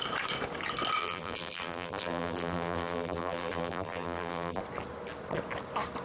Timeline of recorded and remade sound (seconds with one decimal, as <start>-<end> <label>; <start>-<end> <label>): 0.0-1.0 recorded; 1.0-4.6 remade; 4.6-6.0 recorded